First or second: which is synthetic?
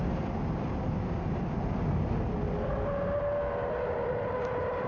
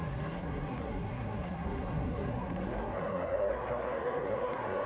second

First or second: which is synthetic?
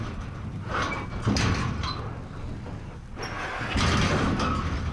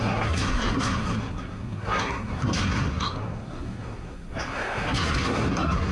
second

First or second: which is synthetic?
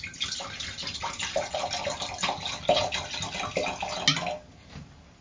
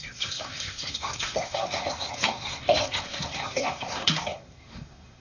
second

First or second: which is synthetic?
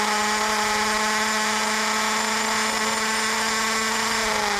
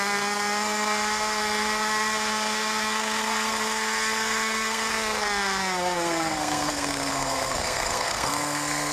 second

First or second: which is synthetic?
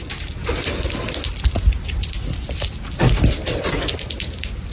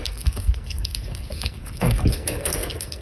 second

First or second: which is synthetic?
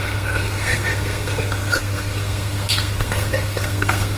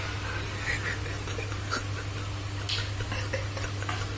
first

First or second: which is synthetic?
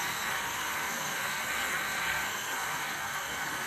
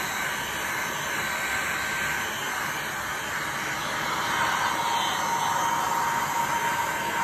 first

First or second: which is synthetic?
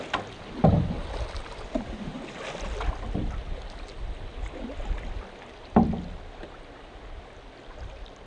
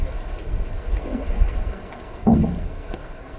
second